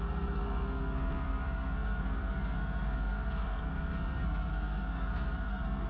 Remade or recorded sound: remade